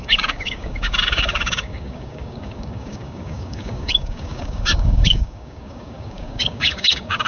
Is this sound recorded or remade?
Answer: remade